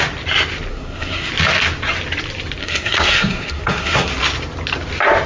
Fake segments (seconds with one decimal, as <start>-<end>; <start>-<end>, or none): 0.7-1.3; 2.6-4.1